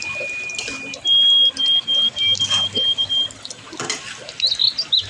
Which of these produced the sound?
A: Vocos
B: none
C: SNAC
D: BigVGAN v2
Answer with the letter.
B